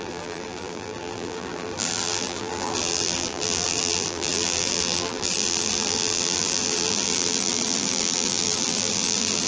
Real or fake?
fake